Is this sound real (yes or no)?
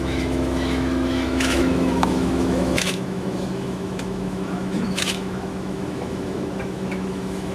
no